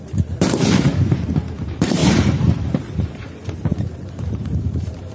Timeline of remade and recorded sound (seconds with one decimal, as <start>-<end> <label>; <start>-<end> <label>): 0.0-0.9 remade; 0.9-1.5 recorded; 1.5-5.1 remade